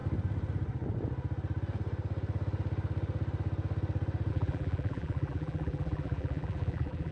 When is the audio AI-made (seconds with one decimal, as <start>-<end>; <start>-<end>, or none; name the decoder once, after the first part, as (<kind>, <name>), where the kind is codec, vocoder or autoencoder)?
4.3-7.1 (vocoder, BigVGAN v2)